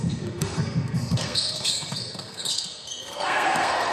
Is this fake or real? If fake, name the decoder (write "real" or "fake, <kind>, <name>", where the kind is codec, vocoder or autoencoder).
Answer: fake, codec, SNAC